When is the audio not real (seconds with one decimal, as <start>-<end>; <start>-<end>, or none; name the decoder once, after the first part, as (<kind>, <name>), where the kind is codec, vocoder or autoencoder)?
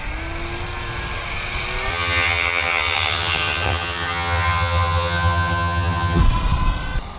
1.9-6.2 (vocoder, HiFi-GAN)